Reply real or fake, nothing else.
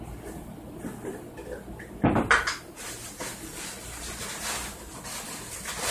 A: real